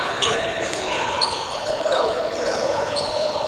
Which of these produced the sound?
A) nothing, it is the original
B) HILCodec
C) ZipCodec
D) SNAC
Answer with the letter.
B